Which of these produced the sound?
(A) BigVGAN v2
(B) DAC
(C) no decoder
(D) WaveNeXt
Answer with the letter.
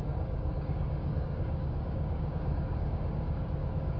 B